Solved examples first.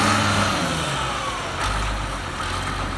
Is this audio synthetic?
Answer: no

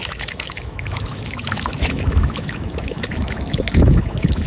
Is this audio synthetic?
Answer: yes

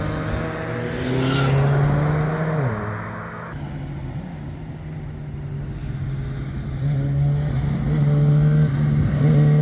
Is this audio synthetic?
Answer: no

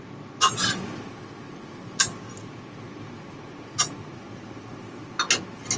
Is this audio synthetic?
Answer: no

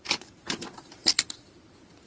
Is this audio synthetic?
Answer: yes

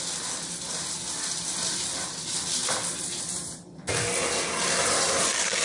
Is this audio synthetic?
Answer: no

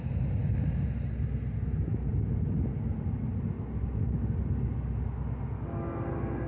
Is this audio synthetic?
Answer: no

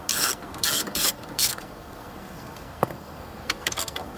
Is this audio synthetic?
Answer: yes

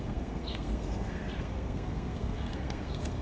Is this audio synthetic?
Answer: yes